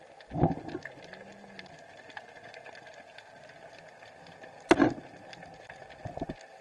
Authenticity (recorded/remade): recorded